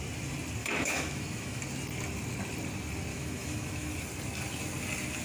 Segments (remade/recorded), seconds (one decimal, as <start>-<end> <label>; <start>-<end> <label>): 0.0-0.6 recorded; 0.6-1.6 remade; 1.6-3.1 recorded; 3.1-3.9 remade; 3.9-5.2 recorded